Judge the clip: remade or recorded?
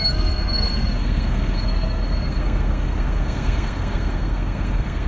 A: remade